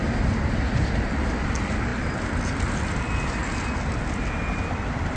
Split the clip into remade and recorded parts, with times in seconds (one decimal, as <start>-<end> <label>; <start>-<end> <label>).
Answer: 0.0-5.2 recorded